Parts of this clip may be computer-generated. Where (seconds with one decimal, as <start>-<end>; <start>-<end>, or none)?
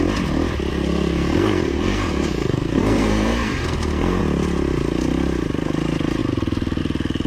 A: 0.7-4.2